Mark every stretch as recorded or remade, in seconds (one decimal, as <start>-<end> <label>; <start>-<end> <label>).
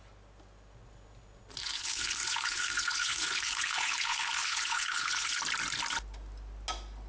0.0-1.6 recorded; 1.6-5.4 remade; 5.4-7.1 recorded